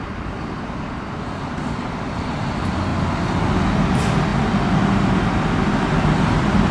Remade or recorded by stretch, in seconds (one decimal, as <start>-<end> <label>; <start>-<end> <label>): 0.0-2.9 remade; 2.9-3.9 recorded; 3.9-6.7 remade